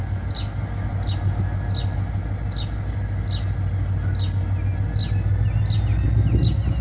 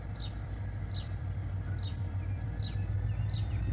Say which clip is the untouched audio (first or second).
first